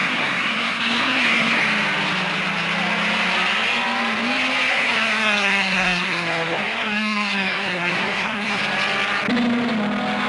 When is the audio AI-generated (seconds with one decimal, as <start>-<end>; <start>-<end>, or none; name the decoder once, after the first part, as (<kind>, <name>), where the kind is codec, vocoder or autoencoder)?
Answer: 0.0-1.6 (codec, SNAC); 4.7-8.6